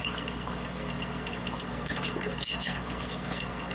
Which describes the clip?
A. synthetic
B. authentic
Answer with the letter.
A